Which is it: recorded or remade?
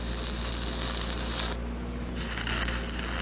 recorded